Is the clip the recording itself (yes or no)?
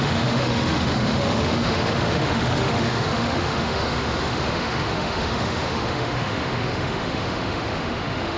no